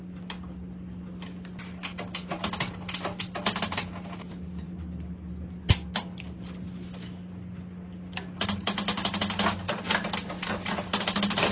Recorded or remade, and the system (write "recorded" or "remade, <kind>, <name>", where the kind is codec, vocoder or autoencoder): recorded